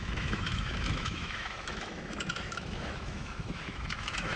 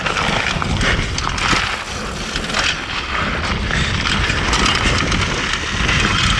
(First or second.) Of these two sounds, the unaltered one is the second